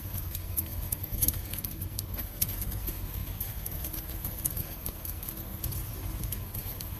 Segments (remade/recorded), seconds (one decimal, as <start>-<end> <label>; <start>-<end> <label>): 0.0-5.6 remade; 5.6-6.2 recorded; 6.2-7.0 remade